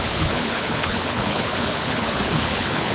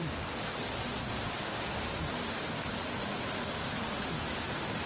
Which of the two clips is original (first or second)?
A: second